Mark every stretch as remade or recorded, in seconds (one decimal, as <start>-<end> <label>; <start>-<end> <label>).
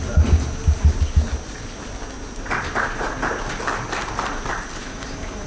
0.0-4.8 recorded; 4.8-5.5 remade